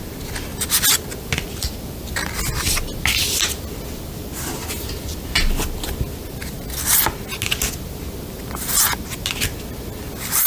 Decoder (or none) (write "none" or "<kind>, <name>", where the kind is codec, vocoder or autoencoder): none